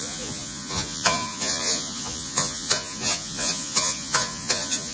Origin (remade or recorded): remade